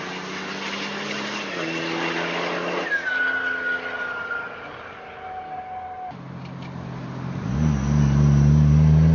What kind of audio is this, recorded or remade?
recorded